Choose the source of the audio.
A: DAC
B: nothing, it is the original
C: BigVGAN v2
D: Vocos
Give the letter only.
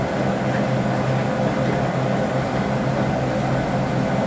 B